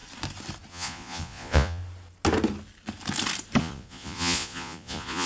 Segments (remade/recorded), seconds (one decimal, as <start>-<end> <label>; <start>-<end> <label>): 0.0-0.7 recorded; 0.7-1.8 remade; 1.8-3.6 recorded; 3.6-5.3 remade